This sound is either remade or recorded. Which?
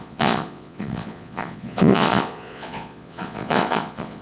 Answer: remade